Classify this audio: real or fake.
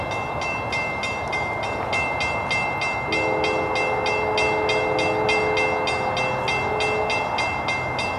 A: real